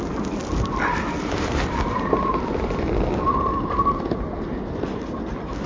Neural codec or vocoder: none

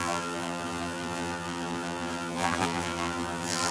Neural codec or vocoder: vocoder, BigVGAN v2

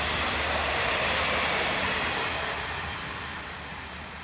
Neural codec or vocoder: none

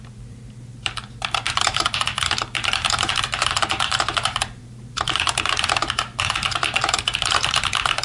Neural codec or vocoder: vocoder, BigVGAN v2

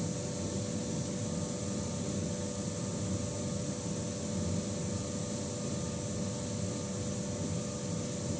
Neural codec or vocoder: none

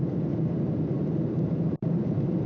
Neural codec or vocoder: vocoder, BigVGAN v2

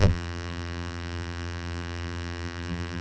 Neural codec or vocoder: vocoder, BigVGAN v2